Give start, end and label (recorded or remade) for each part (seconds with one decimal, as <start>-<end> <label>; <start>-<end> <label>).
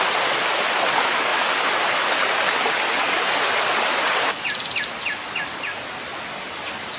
0.0-7.0 recorded